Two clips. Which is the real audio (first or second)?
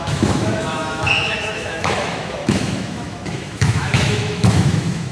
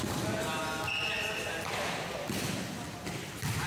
second